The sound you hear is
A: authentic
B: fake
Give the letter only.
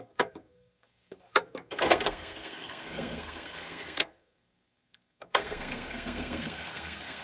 B